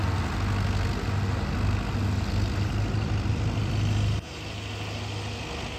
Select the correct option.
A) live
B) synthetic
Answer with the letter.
A